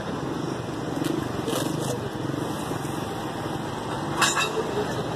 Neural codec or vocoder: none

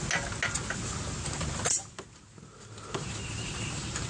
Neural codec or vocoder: none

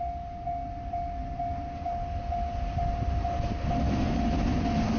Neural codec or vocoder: none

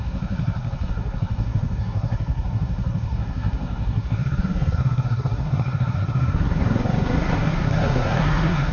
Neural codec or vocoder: codec, SNAC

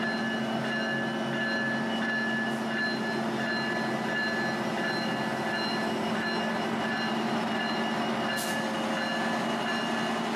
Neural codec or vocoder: none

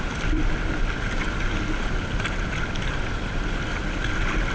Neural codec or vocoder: none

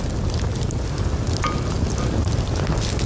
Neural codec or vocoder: none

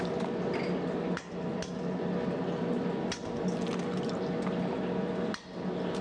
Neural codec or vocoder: none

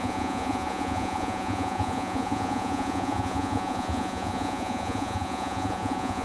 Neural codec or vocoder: vocoder, Vocos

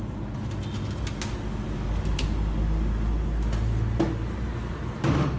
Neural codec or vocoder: none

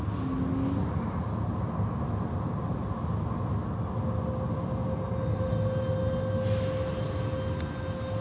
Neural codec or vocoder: none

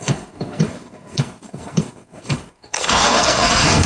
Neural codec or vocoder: codec, SNAC